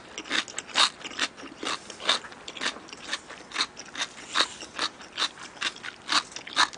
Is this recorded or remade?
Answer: recorded